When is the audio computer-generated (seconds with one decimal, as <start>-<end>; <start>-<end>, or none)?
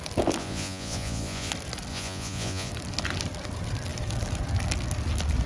0.4-1.5; 1.9-2.7